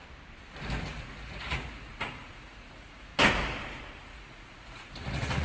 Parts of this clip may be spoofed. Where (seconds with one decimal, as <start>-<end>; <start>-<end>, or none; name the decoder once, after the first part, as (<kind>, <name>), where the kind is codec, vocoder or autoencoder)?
0.8-3.1 (vocoder, Vocos); 4.0-5.4